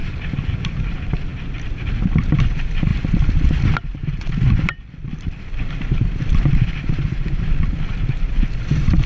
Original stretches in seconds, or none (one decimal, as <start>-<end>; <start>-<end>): 0.0-0.8; 1.3-1.9